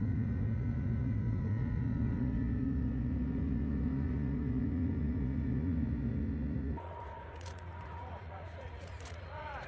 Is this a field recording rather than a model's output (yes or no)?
no